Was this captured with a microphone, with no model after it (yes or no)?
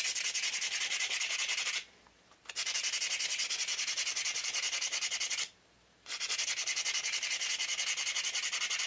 yes